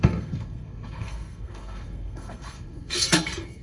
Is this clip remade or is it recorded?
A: remade